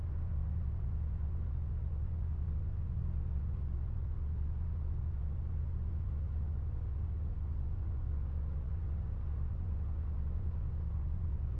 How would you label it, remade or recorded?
remade